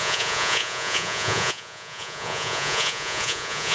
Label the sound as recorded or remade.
remade